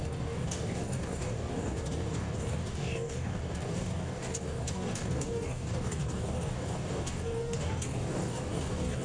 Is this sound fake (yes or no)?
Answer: yes